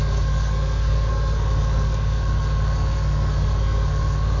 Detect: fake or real fake